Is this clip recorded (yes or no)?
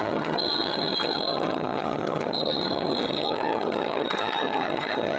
no